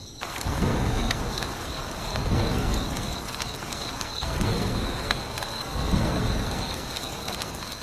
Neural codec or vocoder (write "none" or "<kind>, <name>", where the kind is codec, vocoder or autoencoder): codec, SNAC